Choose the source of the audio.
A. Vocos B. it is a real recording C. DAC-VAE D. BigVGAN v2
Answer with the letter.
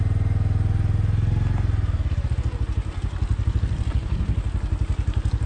B